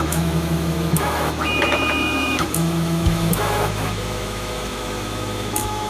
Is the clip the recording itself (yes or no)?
no